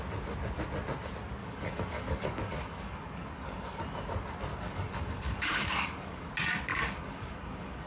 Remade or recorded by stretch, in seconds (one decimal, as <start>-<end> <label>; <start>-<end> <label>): 0.0-1.4 recorded; 1.4-3.8 remade; 3.8-4.5 recorded; 4.5-6.3 remade; 6.3-6.7 recorded; 6.7-7.9 remade